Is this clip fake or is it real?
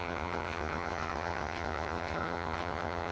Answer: fake